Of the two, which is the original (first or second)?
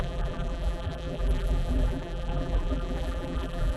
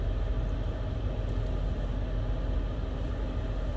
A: second